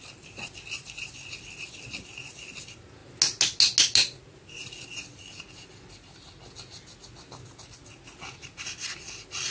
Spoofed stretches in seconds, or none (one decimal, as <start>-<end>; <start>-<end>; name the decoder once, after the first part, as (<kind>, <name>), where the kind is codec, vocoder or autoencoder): none